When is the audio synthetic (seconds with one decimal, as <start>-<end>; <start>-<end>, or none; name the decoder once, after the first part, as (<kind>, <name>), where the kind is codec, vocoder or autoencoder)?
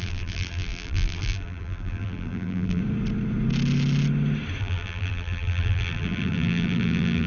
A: 0.0-2.8 (vocoder, BigVGAN v2); 4.6-7.3